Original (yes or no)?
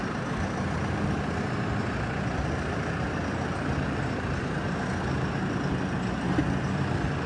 yes